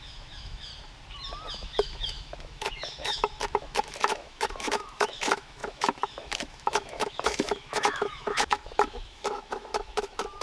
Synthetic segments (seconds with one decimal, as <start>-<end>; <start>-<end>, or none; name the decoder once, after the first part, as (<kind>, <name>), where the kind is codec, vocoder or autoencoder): 0.0-0.7 (autoencoder, DAC-VAE); 1.5-10.4